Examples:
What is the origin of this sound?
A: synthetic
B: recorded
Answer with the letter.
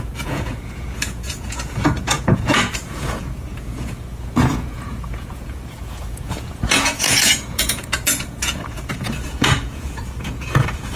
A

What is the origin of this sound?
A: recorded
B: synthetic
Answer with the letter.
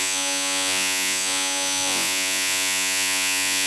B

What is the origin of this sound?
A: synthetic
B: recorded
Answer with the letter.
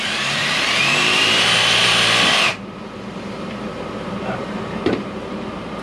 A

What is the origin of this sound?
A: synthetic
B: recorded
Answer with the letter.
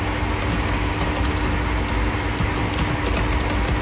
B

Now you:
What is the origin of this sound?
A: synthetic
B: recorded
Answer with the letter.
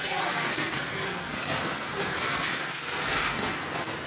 A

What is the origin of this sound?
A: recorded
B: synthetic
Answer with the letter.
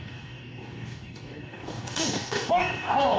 B